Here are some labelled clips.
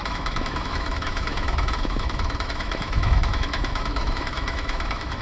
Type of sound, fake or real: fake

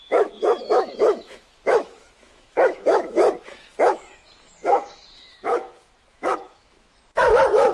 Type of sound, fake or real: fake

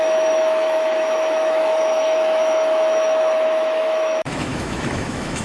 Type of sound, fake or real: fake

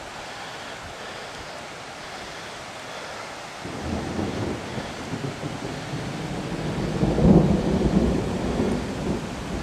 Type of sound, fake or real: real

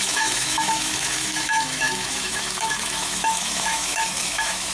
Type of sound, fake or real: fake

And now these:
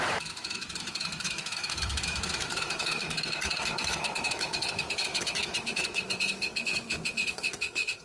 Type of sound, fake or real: fake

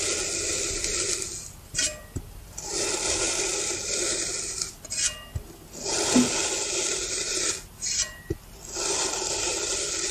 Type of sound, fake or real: real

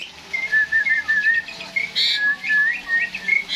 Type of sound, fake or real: real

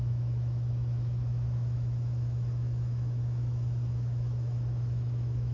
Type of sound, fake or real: fake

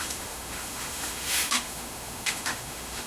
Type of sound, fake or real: fake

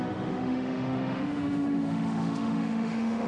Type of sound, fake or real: fake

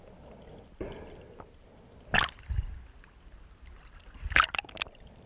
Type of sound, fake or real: real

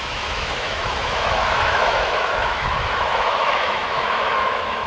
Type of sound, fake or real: fake